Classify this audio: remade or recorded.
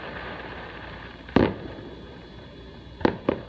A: remade